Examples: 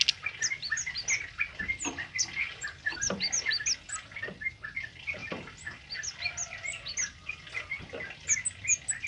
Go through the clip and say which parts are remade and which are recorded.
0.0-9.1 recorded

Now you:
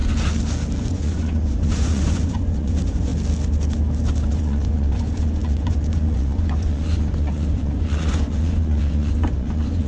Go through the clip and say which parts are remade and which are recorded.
0.0-0.8 recorded; 0.8-3.1 remade; 3.1-4.3 recorded; 4.3-9.9 remade

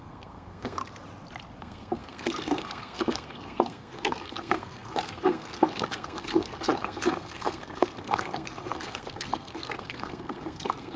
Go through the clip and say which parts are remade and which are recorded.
0.0-0.8 remade; 0.8-1.6 recorded; 1.6-11.0 remade

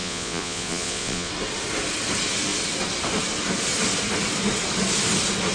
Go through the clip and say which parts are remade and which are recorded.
0.0-1.3 remade; 1.3-5.5 recorded